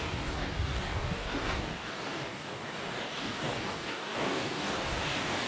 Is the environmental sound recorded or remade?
remade